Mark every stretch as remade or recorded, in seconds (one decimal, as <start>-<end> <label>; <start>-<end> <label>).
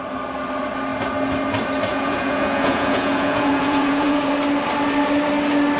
0.0-1.9 recorded; 1.9-4.3 remade; 4.3-5.8 recorded